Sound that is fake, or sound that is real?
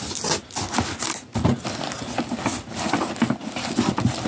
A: real